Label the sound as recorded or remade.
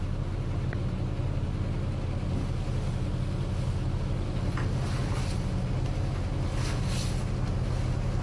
recorded